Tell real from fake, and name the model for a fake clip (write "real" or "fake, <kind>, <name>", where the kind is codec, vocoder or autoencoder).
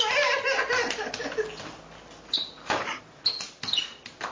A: real